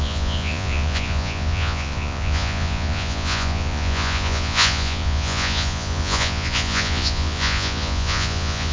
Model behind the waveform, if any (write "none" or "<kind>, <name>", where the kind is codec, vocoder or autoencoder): vocoder, Vocos